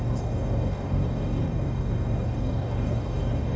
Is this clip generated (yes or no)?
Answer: yes